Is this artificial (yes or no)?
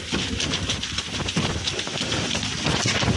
no